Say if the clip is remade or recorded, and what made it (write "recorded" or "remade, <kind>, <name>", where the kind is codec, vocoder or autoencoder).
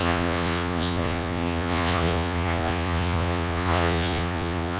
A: remade, vocoder, Vocos